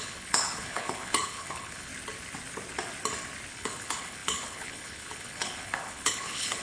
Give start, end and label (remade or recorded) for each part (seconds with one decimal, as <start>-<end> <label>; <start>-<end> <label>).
0.0-1.9 remade; 1.9-3.5 recorded; 3.5-6.6 remade